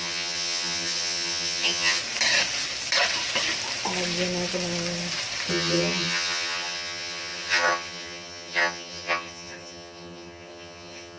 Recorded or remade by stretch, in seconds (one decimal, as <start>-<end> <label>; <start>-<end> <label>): 0.0-2.0 remade; 2.0-5.5 recorded; 5.5-11.2 remade